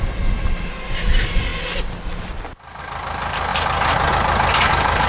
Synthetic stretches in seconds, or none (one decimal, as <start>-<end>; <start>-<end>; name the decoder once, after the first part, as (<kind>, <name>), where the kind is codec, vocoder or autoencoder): none